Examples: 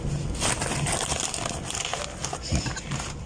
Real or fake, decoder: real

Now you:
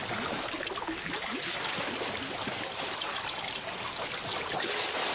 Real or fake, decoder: real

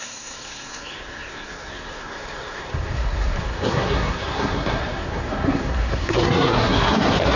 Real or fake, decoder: fake, codec, SNAC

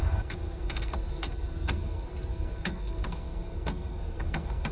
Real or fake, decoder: fake, codec, SNAC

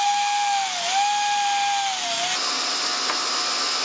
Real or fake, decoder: real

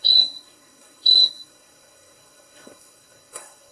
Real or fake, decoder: fake, codec, SNAC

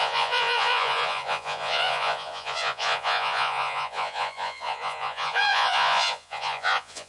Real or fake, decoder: fake, vocoder, Vocos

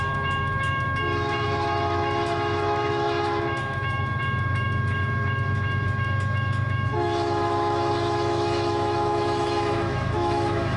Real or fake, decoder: fake, autoencoder, DAC-VAE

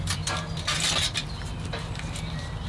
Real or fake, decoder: real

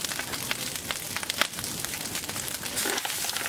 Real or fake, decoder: real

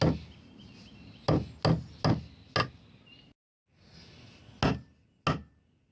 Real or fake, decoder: real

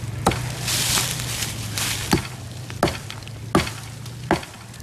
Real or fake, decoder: real